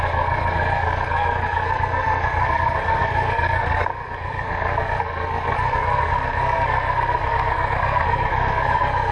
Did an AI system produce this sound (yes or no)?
yes